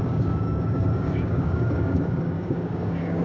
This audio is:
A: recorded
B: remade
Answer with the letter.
B